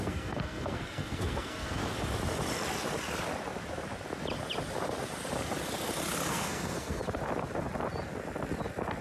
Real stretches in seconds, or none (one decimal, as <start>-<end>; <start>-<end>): 1.8-6.3; 7.0-9.0